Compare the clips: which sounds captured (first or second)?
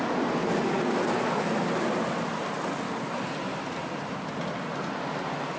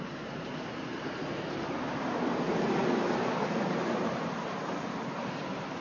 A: first